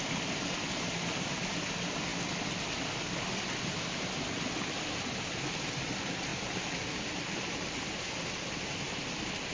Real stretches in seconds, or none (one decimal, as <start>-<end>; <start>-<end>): 2.1-3.6